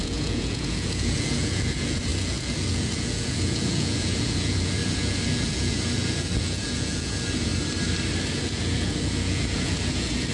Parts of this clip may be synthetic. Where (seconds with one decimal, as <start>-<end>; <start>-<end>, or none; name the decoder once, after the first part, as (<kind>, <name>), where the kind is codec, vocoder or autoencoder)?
0.0-7.5 (vocoder, Vocos); 8.3-10.3